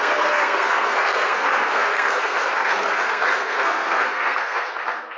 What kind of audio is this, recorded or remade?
remade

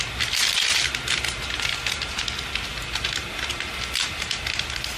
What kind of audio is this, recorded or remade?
recorded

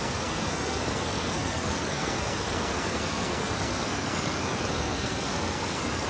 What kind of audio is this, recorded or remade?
remade